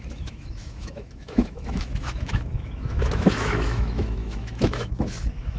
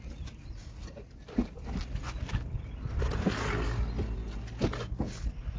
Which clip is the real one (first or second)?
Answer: second